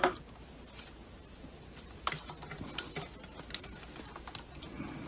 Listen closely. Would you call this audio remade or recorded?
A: recorded